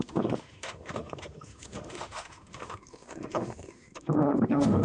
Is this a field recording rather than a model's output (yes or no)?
no